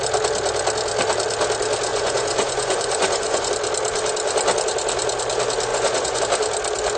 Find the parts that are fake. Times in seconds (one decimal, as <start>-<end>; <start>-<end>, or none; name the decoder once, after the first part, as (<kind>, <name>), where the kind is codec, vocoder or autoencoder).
1.9-3.5 (vocoder, Vocos); 5.7-6.2